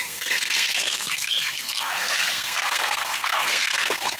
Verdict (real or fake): fake